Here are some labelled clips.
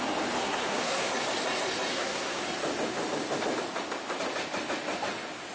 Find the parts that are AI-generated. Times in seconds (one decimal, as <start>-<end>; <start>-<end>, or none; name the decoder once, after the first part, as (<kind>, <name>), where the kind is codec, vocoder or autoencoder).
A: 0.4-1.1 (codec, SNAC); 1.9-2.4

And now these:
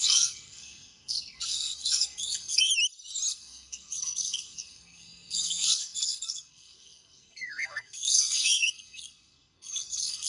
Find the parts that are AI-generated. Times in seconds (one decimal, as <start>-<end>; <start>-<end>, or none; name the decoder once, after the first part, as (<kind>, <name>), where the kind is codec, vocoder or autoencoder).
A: 0.0-2.7 (codec, SNAC); 3.3-10.3

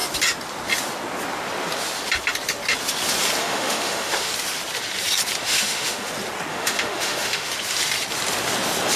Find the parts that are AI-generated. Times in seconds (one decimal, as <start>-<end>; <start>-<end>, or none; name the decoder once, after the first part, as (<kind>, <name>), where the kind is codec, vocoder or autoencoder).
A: 3.4-4.3 (autoencoder, DAC-VAE); 5.4-6.1; 6.5-7.5

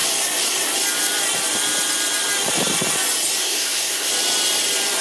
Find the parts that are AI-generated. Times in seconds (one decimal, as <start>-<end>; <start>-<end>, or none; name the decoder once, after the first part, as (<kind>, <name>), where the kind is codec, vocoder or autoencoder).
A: 3.4-4.1 (codec, SNAC)

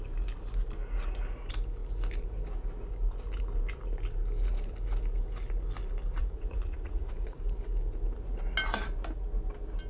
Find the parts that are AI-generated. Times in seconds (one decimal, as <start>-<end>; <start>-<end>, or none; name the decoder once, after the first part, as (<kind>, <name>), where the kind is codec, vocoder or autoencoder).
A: 6.2-7.4 (vocoder, Vocos)

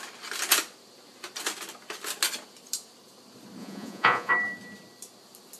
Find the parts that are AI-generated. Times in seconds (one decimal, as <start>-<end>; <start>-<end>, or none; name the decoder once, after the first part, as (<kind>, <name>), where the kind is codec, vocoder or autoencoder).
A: 3.6-4.3 (vocoder, Vocos)